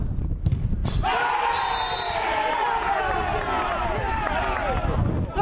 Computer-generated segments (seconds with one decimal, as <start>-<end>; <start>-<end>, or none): none